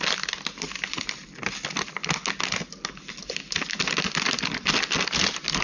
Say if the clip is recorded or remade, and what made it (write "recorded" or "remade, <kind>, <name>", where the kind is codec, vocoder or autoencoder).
recorded